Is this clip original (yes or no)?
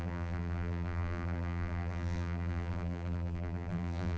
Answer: no